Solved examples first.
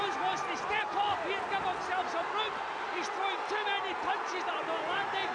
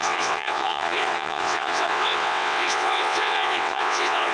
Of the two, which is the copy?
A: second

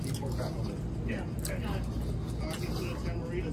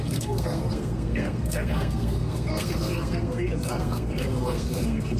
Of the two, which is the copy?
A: second